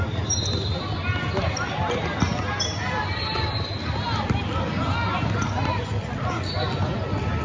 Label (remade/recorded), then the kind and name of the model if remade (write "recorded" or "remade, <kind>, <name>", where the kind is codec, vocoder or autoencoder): recorded